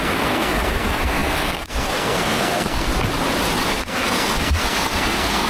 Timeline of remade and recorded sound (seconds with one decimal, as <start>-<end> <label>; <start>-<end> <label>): 0.0-2.9 remade; 2.9-3.7 recorded; 3.7-5.5 remade